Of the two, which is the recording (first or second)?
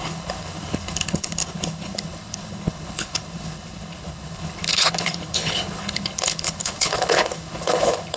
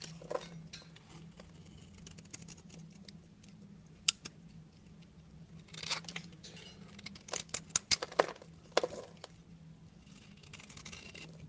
second